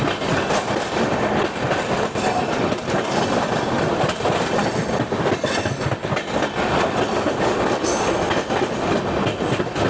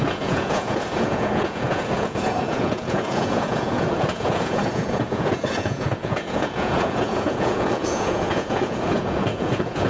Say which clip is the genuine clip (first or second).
first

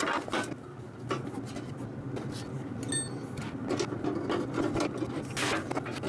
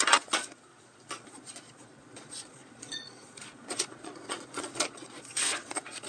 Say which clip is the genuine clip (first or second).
first